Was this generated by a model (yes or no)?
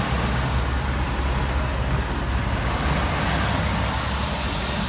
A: no